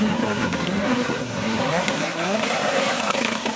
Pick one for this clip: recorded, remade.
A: remade